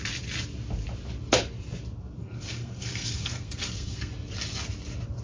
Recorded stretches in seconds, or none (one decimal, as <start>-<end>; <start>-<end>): 0.0-2.2; 4.1-5.2